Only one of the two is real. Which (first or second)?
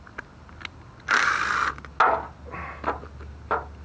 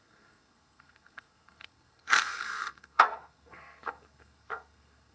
first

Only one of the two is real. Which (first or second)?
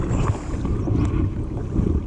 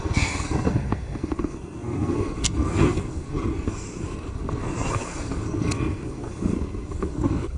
first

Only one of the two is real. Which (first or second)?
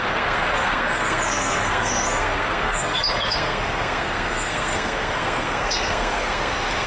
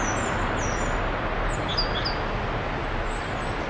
second